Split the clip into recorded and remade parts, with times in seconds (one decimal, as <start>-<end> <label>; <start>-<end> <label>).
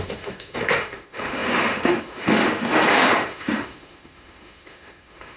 0.0-5.4 remade